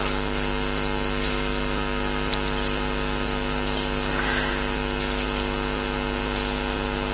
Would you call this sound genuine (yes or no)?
yes